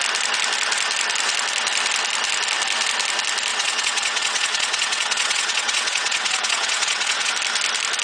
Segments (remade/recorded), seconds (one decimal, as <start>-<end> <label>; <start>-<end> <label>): 0.0-3.5 recorded; 3.5-7.3 remade; 7.3-8.0 recorded